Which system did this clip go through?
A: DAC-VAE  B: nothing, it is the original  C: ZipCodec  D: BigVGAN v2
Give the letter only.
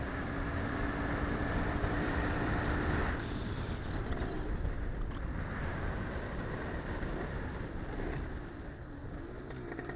D